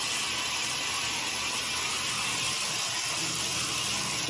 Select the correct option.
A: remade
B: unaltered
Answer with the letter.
B